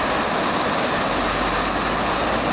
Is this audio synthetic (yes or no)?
no